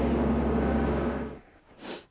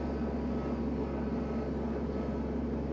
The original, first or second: second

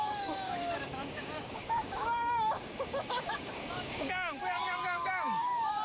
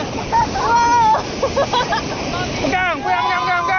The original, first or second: second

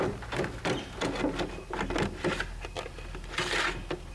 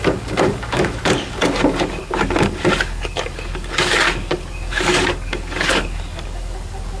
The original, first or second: first